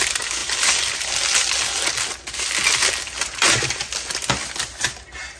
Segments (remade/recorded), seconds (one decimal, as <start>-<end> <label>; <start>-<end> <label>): 0.0-5.4 recorded